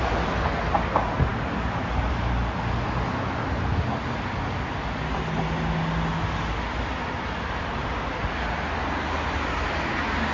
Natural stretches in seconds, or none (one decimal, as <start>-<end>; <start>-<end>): 0.0-10.3